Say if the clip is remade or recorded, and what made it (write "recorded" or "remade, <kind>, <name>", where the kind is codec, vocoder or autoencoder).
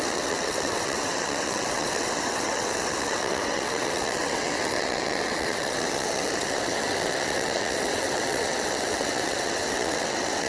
remade, vocoder, WaveNeXt